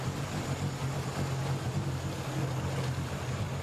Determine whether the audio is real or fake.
real